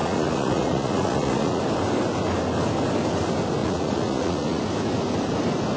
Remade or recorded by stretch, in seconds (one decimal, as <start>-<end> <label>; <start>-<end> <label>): 0.0-1.6 remade; 1.6-3.6 recorded; 3.6-4.6 remade; 4.6-5.8 recorded